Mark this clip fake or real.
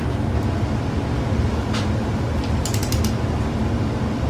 real